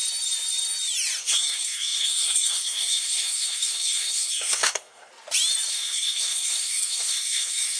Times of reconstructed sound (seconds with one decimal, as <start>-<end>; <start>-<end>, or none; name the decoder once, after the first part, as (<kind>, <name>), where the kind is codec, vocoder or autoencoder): 1.2-5.1 (codec, SNAC); 5.7-7.8